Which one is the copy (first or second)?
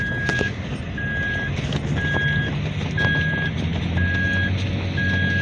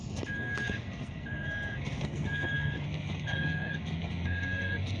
second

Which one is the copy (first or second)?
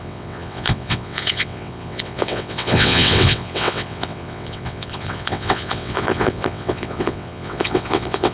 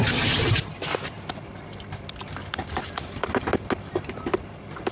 first